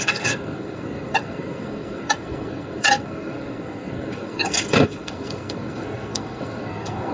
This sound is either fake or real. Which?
fake